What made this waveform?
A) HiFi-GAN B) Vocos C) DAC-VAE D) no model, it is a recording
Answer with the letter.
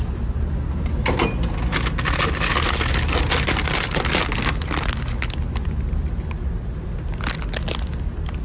D